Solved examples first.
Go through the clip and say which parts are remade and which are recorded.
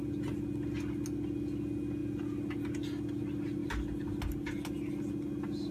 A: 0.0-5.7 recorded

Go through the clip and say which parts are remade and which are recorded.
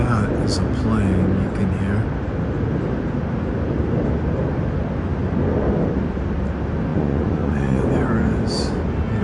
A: 0.0-6.9 recorded; 6.9-7.8 remade; 7.8-9.2 recorded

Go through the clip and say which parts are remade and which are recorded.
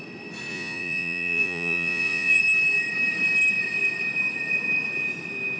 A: 0.0-0.5 recorded; 0.5-2.4 remade; 2.4-5.6 recorded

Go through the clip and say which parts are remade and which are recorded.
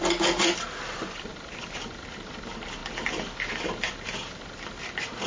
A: 0.0-1.3 remade; 1.3-2.4 recorded; 2.4-2.8 remade; 2.8-3.5 recorded; 3.5-5.3 remade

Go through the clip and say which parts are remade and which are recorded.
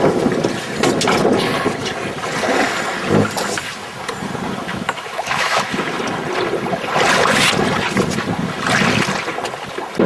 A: 0.0-4.7 recorded; 4.7-5.7 remade; 5.7-10.1 recorded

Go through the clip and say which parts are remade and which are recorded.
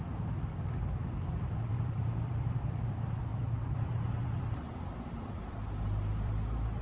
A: 0.0-0.5 remade; 0.5-1.3 recorded; 1.3-6.8 remade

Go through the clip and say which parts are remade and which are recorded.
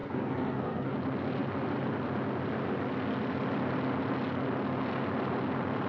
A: 0.0-0.9 remade; 0.9-5.9 recorded